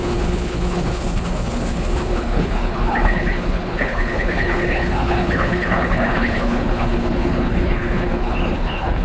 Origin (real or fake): fake